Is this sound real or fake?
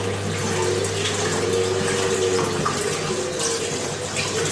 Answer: real